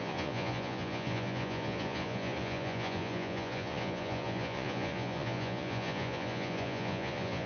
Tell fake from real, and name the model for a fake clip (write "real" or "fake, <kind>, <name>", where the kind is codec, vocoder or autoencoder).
fake, vocoder, Vocos